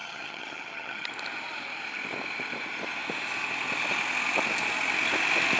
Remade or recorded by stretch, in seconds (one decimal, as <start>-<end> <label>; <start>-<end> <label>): 0.0-1.1 remade; 1.1-5.6 recorded